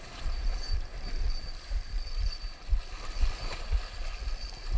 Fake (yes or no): no